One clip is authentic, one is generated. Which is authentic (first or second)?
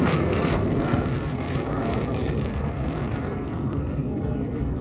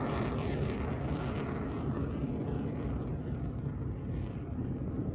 second